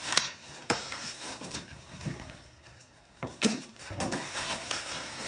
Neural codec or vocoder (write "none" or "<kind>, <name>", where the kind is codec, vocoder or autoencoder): codec, SNAC